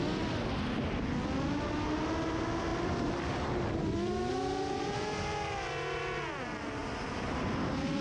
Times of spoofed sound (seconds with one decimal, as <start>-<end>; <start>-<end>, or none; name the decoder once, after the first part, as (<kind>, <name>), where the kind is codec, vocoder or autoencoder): 2.7-4.3 (vocoder, BigVGAN v2); 6.8-8.0